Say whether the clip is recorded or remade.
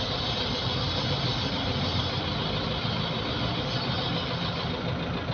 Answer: recorded